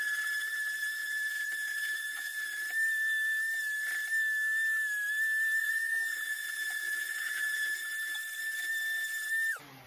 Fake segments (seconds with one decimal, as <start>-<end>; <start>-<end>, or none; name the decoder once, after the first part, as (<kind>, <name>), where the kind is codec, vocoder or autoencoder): 1.0-2.6 (vocoder, Vocos); 5.6-7.8